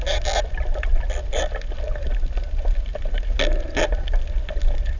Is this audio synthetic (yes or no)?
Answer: no